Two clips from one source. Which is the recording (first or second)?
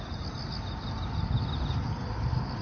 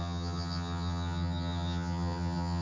first